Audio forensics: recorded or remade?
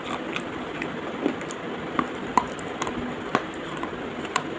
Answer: recorded